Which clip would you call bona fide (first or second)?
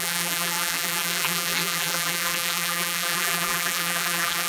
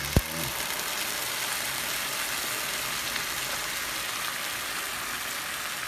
second